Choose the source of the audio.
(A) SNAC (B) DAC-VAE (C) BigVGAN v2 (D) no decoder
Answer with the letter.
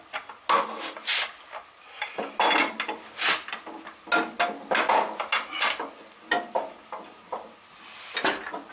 D